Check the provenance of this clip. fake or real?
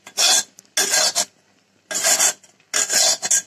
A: real